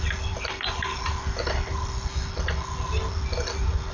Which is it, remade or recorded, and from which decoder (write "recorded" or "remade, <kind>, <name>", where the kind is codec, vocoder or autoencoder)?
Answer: recorded